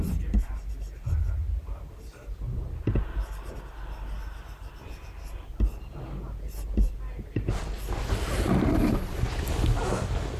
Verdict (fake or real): real